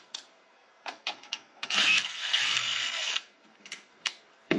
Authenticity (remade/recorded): remade